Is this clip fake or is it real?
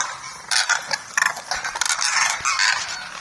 real